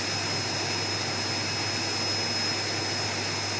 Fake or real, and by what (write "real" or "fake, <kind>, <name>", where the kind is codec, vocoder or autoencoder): real